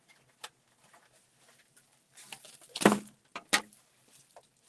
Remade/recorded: recorded